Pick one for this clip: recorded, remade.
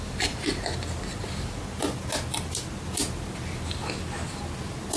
recorded